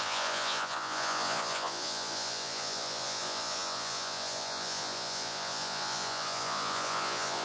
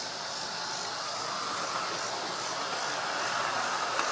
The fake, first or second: first